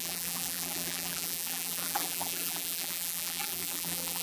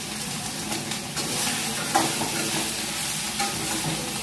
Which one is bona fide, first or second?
second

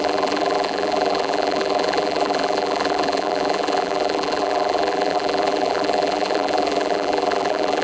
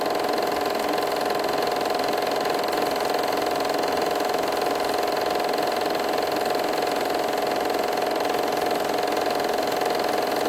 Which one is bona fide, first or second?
second